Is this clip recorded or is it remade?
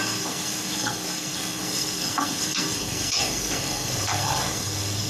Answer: remade